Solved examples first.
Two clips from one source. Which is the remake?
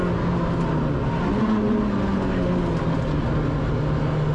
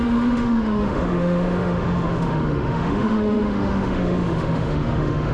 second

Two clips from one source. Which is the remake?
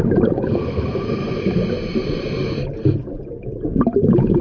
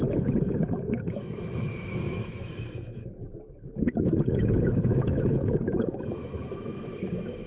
second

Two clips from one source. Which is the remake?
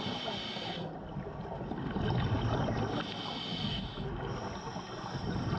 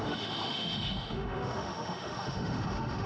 second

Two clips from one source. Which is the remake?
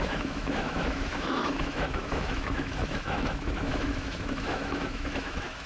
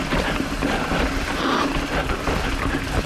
first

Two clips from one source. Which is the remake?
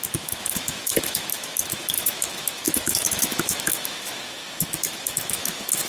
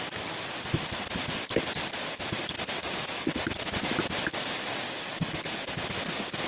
first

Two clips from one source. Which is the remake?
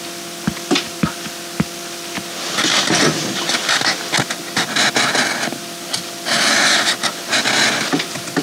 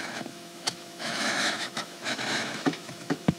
second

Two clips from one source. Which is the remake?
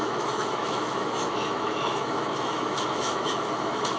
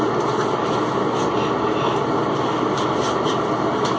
first